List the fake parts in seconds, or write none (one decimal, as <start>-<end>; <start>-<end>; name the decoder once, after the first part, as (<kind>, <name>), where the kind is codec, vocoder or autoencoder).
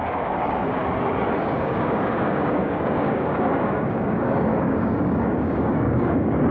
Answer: 0.0-0.8 (codec, DAC); 1.4-6.5